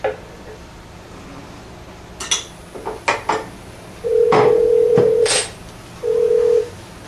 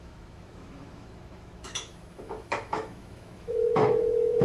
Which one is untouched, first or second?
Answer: first